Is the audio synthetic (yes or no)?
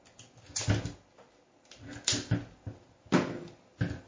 no